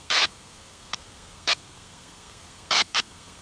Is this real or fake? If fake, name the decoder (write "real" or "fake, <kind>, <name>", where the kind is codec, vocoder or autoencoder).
fake, codec, SNAC